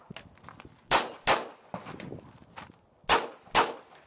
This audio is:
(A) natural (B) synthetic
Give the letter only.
A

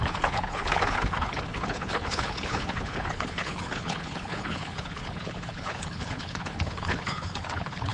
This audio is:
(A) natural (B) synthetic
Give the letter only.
B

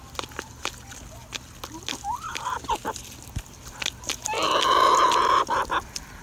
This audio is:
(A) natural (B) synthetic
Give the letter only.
A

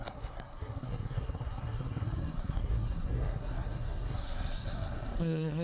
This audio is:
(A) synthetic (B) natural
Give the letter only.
A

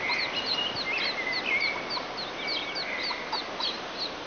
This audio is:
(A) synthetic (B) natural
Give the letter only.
B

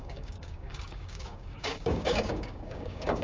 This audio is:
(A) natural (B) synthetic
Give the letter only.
B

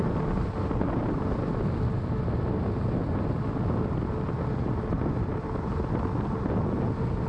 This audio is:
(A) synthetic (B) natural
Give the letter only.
B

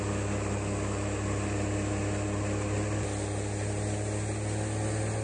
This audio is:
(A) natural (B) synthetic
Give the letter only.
A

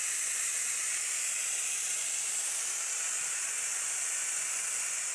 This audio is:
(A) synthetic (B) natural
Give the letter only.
B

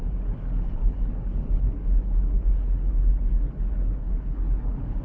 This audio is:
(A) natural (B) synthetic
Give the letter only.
B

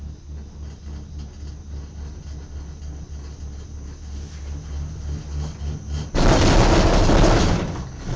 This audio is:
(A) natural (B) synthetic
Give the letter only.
A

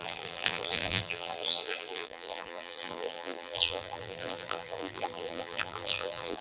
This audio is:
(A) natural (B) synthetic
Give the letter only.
B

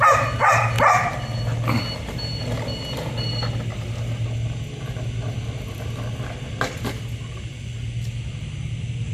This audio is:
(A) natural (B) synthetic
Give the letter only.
A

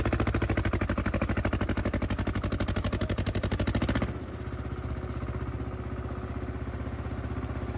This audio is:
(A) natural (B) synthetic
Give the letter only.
A